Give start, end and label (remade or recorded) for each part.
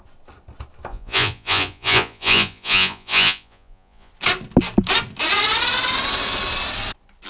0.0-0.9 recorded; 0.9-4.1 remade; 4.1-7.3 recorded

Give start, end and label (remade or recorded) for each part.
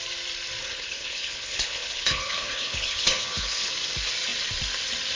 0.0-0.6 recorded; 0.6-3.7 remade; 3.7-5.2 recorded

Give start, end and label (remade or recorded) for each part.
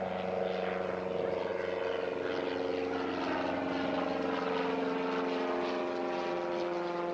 0.0-7.1 recorded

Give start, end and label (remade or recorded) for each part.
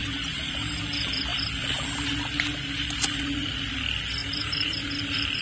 0.0-0.8 remade; 0.8-4.2 recorded; 4.2-4.8 remade; 4.8-5.4 recorded